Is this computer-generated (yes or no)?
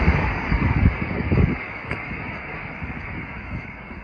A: yes